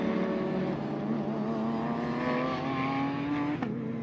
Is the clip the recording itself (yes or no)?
yes